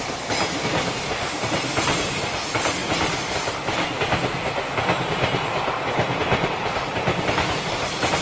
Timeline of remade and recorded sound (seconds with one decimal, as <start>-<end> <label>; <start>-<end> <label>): 0.0-8.2 recorded